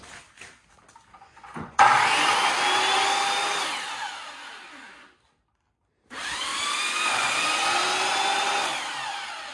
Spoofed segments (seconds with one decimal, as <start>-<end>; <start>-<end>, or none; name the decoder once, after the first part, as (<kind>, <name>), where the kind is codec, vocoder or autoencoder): 1.1-1.8 (vocoder, Vocos); 6.5-7.3